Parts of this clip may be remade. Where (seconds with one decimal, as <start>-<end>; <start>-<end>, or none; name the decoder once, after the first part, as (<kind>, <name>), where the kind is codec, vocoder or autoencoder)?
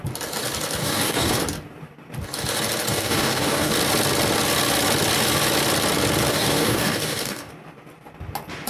0.8-1.4 (codec, DAC); 2.9-3.7; 6.3-7.5